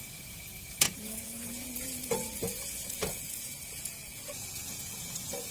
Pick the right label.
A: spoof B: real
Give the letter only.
A